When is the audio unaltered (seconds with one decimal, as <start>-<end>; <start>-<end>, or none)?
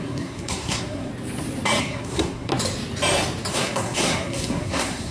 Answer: 1.1-1.8; 2.5-3.5